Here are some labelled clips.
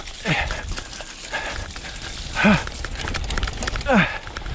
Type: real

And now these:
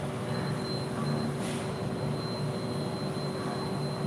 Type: real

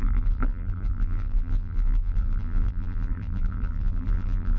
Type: fake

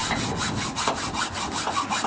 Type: real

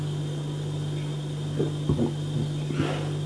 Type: real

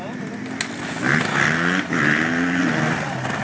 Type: real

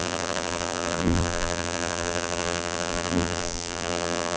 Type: fake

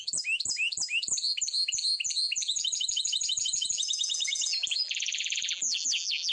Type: fake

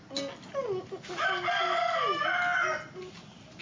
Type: real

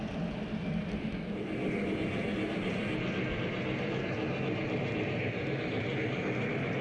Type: real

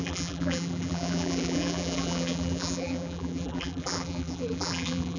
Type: fake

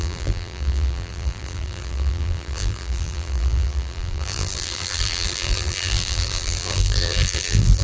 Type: fake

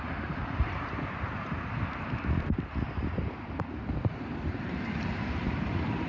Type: fake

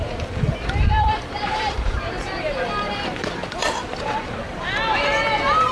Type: fake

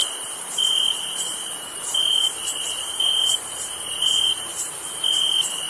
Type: fake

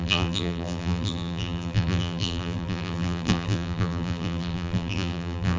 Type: fake